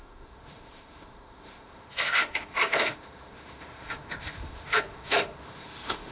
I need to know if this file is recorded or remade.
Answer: remade